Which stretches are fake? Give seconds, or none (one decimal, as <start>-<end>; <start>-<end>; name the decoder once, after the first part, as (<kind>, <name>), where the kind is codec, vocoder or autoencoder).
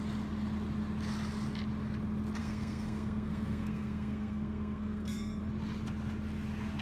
2.4-5.4 (codec, SNAC)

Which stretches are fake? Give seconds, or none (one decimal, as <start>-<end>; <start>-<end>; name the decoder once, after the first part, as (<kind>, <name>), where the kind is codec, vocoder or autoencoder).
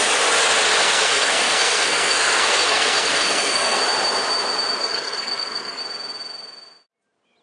0.8-3.8 (codec, SNAC); 4.8-5.8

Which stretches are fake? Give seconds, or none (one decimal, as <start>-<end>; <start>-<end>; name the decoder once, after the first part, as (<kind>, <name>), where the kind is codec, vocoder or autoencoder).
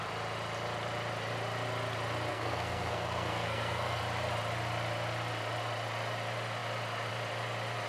2.3-4.0 (codec, SNAC)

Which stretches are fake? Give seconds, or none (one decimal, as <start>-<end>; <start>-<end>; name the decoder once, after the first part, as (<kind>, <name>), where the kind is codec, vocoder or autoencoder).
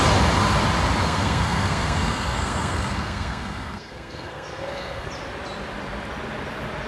1.0-5.1 (codec, SNAC)